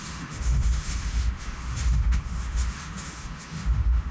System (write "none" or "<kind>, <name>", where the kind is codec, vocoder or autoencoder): autoencoder, DAC-VAE